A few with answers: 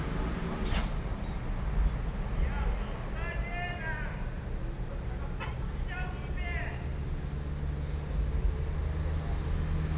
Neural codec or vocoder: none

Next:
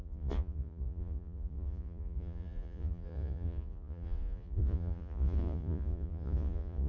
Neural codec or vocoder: vocoder, Vocos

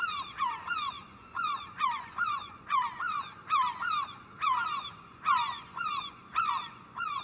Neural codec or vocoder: vocoder, Vocos